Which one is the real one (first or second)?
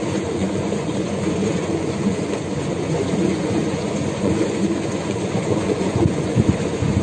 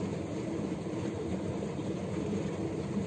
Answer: second